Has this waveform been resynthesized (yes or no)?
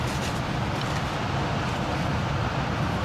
no